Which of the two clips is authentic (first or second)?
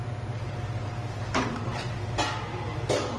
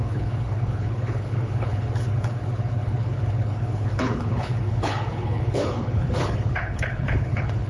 first